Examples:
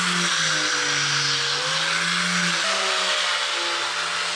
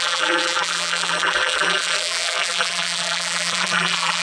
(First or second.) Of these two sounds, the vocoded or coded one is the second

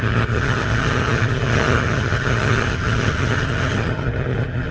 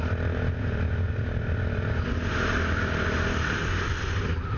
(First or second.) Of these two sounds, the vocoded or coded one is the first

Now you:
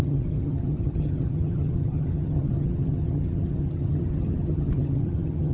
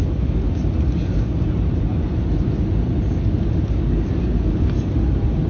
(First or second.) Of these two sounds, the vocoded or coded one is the first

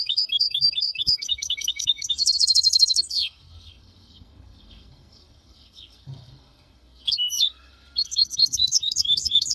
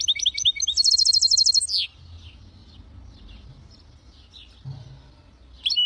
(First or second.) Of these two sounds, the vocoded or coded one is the first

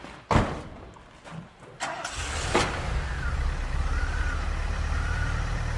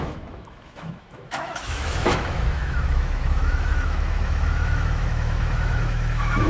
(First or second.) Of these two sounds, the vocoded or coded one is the second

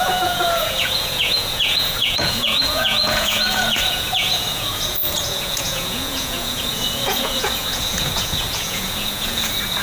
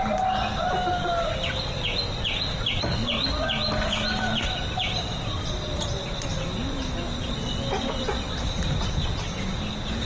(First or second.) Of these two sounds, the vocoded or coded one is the first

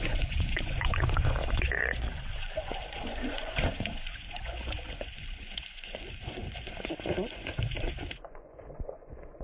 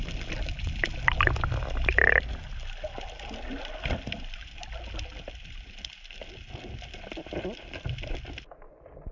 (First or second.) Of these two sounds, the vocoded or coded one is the first